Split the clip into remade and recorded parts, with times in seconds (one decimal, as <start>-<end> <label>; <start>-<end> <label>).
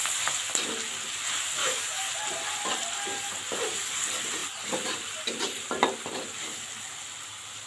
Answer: 0.0-1.6 recorded; 1.6-2.1 remade; 2.1-7.7 recorded